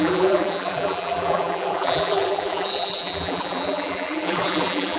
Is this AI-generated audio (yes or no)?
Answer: yes